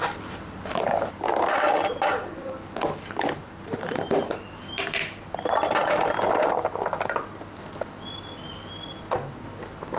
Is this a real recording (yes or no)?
yes